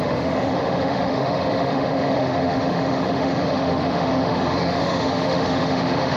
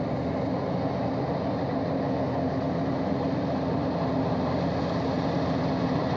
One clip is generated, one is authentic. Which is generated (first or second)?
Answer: first